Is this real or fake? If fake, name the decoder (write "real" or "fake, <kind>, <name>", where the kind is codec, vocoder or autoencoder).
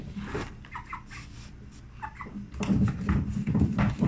real